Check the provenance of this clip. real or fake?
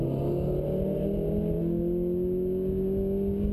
real